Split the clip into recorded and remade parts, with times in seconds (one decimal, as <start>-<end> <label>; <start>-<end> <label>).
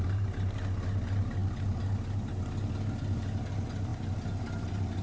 0.0-5.0 recorded